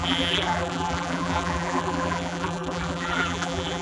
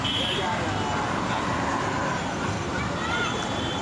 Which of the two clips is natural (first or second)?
second